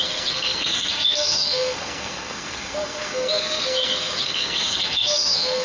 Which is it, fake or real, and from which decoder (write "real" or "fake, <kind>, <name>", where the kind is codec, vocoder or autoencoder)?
fake, codec, SNAC